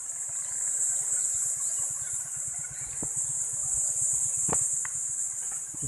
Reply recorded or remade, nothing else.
recorded